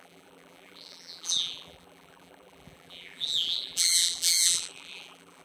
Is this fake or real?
fake